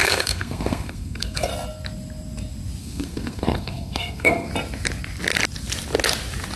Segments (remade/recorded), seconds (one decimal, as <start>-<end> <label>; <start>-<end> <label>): 0.0-1.5 remade; 1.5-2.8 recorded; 2.8-4.5 remade; 4.5-6.6 recorded